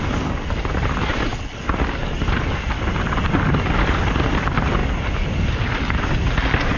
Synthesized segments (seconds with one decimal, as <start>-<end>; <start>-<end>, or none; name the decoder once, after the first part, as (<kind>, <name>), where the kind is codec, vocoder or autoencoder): none